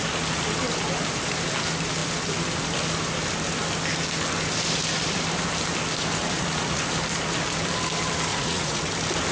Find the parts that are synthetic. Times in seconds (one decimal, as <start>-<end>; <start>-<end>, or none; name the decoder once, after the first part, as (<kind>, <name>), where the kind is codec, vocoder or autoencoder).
6.2-6.8 (vocoder, Vocos); 8.3-8.9